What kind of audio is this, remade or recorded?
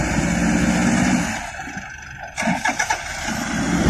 recorded